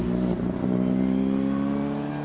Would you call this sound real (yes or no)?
yes